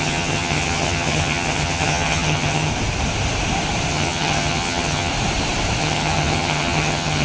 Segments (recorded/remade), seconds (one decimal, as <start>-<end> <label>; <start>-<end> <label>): 0.0-2.7 remade; 2.7-3.9 recorded; 3.9-5.1 remade; 5.1-5.8 recorded; 5.8-7.2 remade